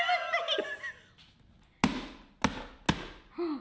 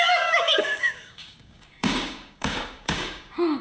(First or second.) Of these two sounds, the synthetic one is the second